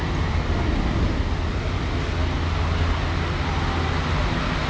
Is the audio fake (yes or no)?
no